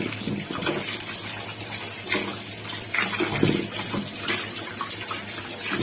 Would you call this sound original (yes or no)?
yes